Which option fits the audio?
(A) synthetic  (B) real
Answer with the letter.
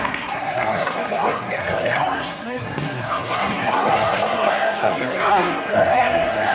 A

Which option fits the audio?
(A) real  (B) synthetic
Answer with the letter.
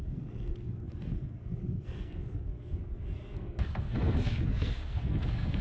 B